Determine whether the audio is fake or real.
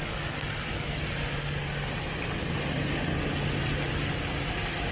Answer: real